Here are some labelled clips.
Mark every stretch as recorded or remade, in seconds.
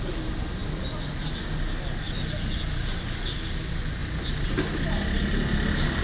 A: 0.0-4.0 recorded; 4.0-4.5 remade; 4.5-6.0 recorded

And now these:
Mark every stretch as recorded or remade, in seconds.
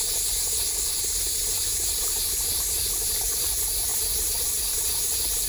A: 0.0-1.7 recorded; 1.7-2.5 remade; 2.5-5.5 recorded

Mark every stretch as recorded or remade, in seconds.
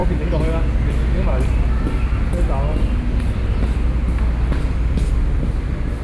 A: 0.0-6.0 recorded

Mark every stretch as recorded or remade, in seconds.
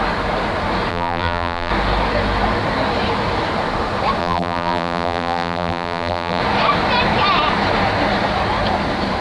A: 0.0-0.9 recorded; 0.9-1.7 remade; 1.7-4.2 recorded; 4.2-6.4 remade; 6.4-9.2 recorded